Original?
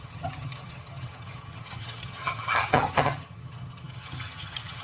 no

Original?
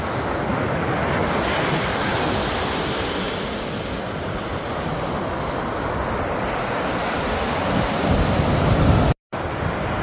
yes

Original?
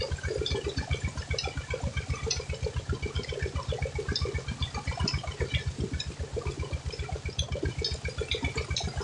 yes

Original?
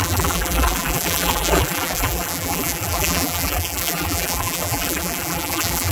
no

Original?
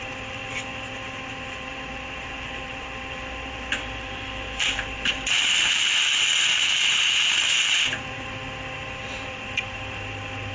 no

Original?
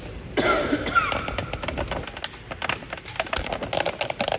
yes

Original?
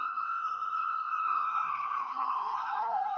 no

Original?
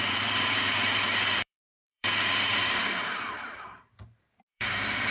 no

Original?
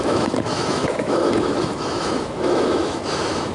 no